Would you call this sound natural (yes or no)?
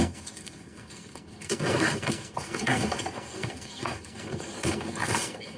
no